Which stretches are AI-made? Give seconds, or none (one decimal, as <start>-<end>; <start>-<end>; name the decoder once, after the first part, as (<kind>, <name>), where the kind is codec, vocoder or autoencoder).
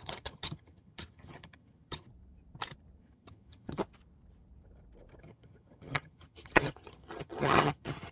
0.0-2.1 (vocoder, HiFi-GAN); 3.0-3.8; 5.2-8.1